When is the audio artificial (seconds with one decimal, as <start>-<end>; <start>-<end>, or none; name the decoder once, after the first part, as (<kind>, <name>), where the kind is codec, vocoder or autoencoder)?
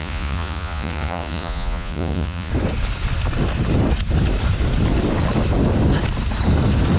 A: 0.0-2.5 (vocoder, Vocos)